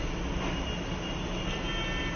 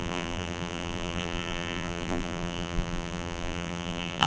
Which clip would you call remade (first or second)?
second